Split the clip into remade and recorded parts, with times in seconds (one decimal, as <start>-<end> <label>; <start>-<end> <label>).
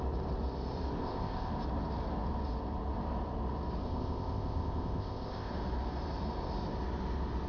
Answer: 0.0-1.0 recorded; 1.0-1.5 remade; 1.5-3.8 recorded; 3.8-5.5 remade; 5.5-7.5 recorded